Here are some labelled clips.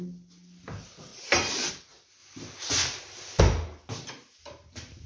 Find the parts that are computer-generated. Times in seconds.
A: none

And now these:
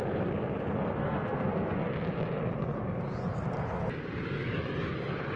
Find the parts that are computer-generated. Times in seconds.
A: 1.0-1.9 (codec, SNAC)

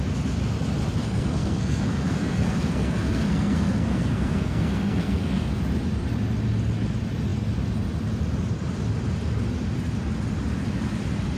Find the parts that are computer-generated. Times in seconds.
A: 1.0-5.6 (codec, SNAC)

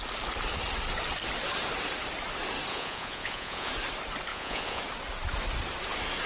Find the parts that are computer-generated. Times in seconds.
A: 2.7-3.7 (vocoder, Vocos); 4.3-4.8